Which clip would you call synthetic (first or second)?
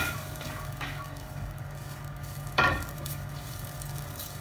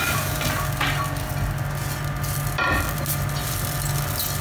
first